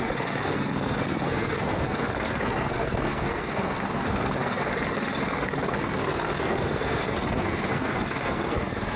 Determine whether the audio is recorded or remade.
remade